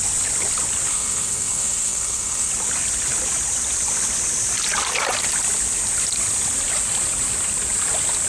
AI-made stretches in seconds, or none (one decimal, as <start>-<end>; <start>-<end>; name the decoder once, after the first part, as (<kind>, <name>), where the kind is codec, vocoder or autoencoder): 0.9-2.5 (codec, SNAC)